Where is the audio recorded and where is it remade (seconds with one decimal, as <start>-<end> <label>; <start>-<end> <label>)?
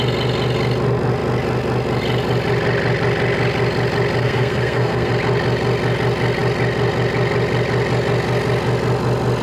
0.0-4.2 recorded; 4.2-5.1 remade; 5.1-9.4 recorded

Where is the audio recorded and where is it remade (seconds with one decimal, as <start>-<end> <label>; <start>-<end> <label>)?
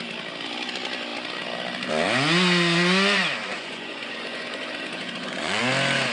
0.0-3.5 recorded; 3.5-5.6 remade; 5.6-6.1 recorded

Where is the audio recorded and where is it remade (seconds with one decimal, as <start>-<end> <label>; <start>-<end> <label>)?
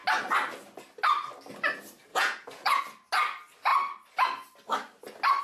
0.0-2.1 recorded; 2.1-2.8 remade; 2.8-5.4 recorded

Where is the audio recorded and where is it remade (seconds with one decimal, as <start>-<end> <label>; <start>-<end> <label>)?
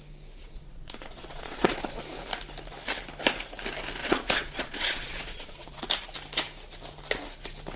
0.0-0.4 recorded; 0.4-2.0 remade; 2.0-4.0 recorded; 4.0-5.8 remade; 5.8-7.8 recorded